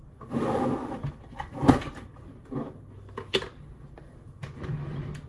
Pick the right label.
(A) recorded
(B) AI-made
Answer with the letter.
A